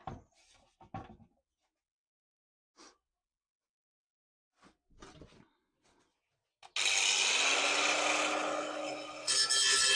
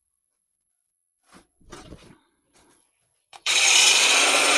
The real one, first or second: first